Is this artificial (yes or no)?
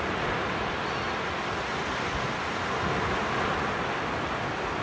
no